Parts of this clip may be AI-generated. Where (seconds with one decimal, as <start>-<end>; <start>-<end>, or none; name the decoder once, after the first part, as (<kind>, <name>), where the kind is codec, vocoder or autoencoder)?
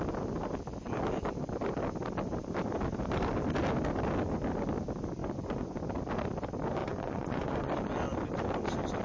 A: 5.2-5.8 (vocoder, Vocos); 6.8-7.7